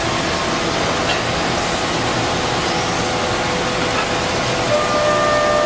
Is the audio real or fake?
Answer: real